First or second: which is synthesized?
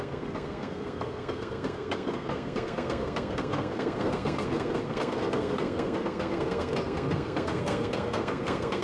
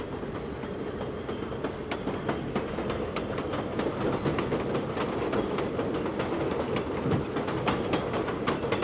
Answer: first